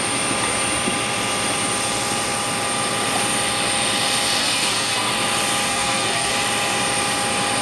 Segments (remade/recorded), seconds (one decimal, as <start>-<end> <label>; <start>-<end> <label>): 0.0-4.4 recorded; 4.4-5.1 remade; 5.1-5.7 recorded; 5.7-6.3 remade; 6.3-7.6 recorded